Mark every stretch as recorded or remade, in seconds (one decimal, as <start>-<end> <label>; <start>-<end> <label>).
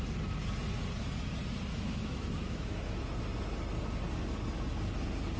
0.0-1.7 recorded; 1.7-3.0 remade; 3.0-5.4 recorded